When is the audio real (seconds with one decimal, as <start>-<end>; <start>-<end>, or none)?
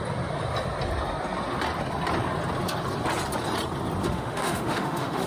0.0-4.0